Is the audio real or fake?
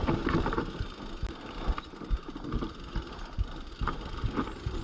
real